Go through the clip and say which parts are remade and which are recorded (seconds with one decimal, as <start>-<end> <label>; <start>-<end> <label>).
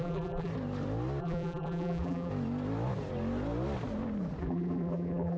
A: 0.0-0.5 remade; 0.5-1.2 recorded; 1.2-2.3 remade; 2.3-4.4 recorded; 4.4-5.4 remade